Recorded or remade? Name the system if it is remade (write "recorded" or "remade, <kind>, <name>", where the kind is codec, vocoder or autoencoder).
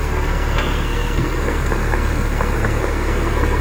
remade, codec, SNAC